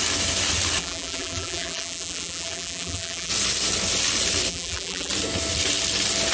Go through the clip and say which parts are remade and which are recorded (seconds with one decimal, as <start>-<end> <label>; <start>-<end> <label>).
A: 0.0-0.8 recorded; 0.8-3.3 remade; 3.3-4.5 recorded; 4.5-5.1 remade; 5.1-6.3 recorded

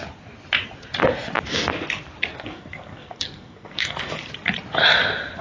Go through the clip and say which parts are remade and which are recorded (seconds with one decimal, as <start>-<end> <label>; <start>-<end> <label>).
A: 0.0-2.3 recorded; 2.3-4.3 remade; 4.3-5.4 recorded

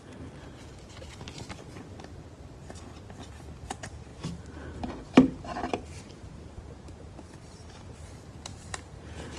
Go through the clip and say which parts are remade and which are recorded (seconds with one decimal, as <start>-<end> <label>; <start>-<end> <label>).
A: 0.0-4.1 recorded; 4.1-7.1 remade; 7.1-8.5 recorded; 8.5-9.4 remade

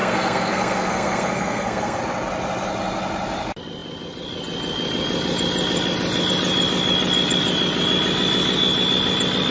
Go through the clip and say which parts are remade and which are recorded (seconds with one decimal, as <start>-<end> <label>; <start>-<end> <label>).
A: 0.0-2.0 remade; 2.0-9.5 recorded

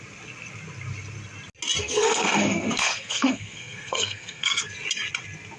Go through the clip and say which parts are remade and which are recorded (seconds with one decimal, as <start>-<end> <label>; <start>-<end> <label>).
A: 0.0-1.8 recorded; 1.8-4.7 remade; 4.7-5.6 recorded